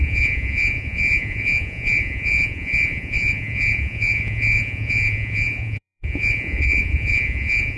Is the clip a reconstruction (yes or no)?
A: yes